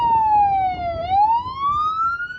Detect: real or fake real